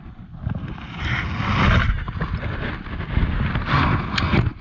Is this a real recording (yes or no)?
yes